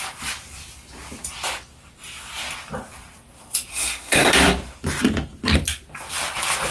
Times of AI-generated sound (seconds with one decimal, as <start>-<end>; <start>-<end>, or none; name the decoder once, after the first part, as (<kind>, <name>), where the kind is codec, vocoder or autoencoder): 3.7-4.3 (codec, SNAC)

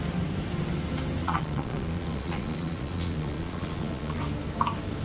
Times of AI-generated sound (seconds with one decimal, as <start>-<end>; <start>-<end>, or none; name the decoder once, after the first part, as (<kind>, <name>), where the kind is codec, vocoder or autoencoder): 1.2-4.2 (vocoder, Vocos)

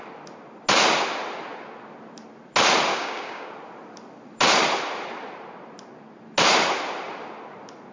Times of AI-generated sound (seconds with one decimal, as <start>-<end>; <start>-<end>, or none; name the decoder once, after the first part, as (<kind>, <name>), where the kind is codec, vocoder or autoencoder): 2.9-3.5 (codec, DAC)

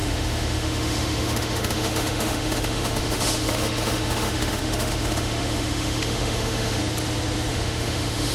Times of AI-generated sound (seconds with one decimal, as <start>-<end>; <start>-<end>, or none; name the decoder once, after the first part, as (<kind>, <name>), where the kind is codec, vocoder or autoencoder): 0.0-6.8 (autoencoder, DAC-VAE); 7.5-8.3

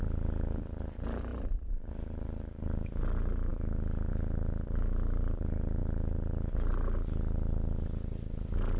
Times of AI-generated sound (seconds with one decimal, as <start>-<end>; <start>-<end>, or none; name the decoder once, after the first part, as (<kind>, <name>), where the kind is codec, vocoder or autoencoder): 1.3-3.0 (vocoder, BigVGAN v2)

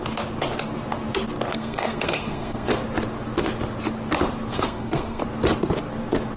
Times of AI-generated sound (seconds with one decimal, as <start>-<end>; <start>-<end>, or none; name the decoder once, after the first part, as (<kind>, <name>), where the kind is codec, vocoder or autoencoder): 1.5-2.7 (codec, SNAC); 4.5-5.2

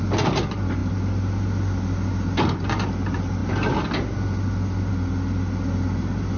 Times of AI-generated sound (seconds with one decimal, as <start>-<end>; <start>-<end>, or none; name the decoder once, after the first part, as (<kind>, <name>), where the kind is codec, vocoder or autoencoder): none

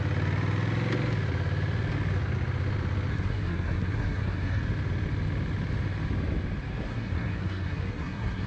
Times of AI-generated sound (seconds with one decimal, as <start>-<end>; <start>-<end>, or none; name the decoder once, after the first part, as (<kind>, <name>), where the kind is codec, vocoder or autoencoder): 3.1-4.6 (codec, SNAC); 6.9-8.5